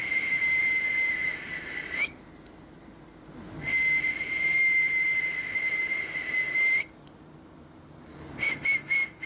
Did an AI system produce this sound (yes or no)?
yes